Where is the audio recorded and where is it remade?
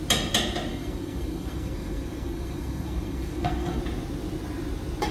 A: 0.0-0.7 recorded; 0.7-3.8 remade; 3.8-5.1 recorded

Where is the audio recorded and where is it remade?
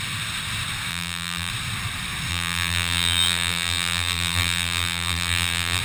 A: 0.0-0.9 recorded; 0.9-1.5 remade; 1.5-2.3 recorded; 2.3-5.8 remade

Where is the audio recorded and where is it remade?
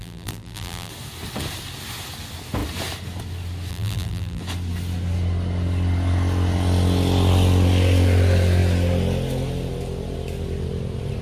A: 0.0-0.9 remade; 0.9-3.7 recorded; 3.7-4.4 remade; 4.4-11.2 recorded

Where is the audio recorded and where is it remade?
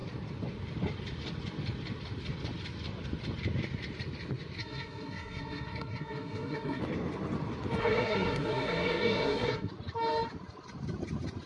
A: 0.0-4.6 recorded; 4.6-6.8 remade; 6.8-7.8 recorded; 7.8-9.7 remade; 9.7-11.5 recorded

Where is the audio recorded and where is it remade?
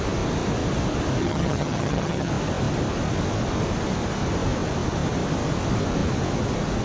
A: 0.0-1.2 recorded; 1.2-2.3 remade; 2.3-6.8 recorded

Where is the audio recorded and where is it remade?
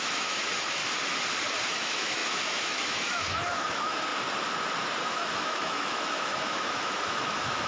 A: 0.0-0.8 remade; 0.8-1.7 recorded; 1.7-4.1 remade; 4.1-5.0 recorded; 5.0-7.7 remade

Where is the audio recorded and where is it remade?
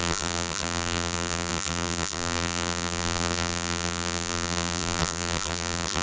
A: 0.0-6.0 remade